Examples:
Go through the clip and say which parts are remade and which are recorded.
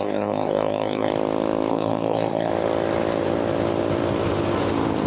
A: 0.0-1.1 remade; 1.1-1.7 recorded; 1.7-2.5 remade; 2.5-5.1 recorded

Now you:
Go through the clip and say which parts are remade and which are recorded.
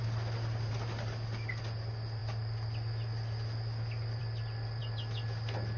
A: 0.0-5.8 recorded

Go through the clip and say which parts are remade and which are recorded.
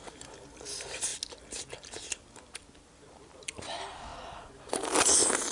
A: 0.0-5.5 recorded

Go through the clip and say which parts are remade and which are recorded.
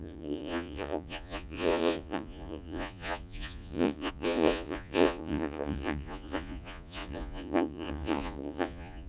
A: 0.0-9.1 remade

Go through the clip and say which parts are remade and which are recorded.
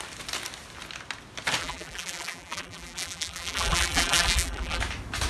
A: 0.0-1.6 recorded; 1.6-4.8 remade; 4.8-5.3 recorded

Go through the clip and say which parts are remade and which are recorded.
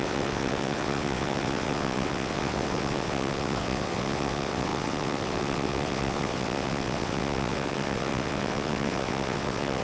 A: 0.0-9.8 remade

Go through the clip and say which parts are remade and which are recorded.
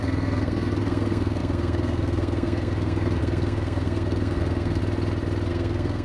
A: 0.0-4.8 remade; 4.8-5.5 recorded; 5.5-6.0 remade